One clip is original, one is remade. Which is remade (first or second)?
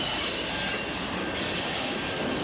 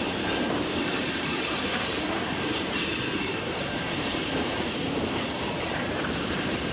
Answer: second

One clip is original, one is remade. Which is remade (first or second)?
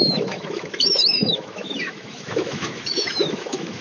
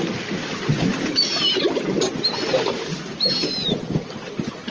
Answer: first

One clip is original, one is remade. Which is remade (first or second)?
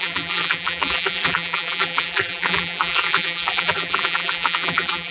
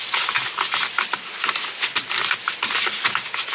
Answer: first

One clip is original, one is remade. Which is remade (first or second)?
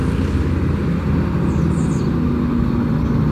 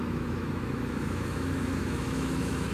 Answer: second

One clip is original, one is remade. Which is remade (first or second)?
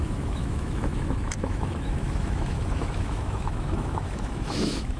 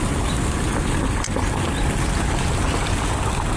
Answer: first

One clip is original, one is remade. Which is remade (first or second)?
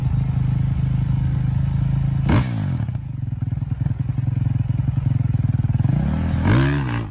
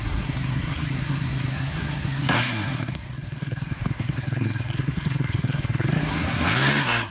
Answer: second